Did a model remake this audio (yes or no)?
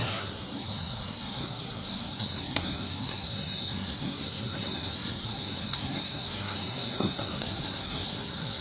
yes